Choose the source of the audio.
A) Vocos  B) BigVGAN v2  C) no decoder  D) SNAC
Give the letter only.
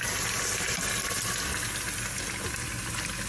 C